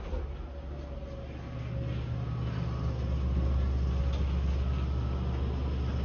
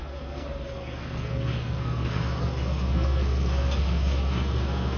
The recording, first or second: first